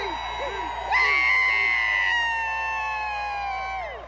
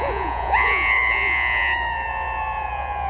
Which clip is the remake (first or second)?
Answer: second